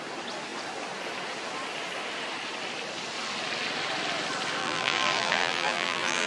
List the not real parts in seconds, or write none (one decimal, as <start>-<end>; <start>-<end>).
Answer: 4.6-6.3

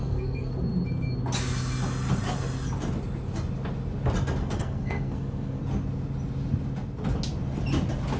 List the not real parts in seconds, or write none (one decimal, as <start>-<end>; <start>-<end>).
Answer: 0.0-0.5; 4.4-5.6

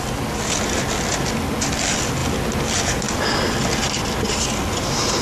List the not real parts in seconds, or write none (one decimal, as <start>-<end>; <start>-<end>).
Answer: none

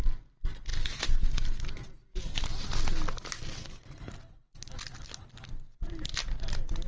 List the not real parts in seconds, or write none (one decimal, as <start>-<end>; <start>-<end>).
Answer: none